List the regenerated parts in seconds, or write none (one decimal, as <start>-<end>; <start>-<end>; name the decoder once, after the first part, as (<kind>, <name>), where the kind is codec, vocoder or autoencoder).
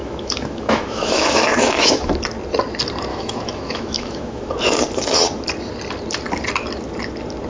0.0-2.2 (autoencoder, DAC-VAE); 3.1-4.5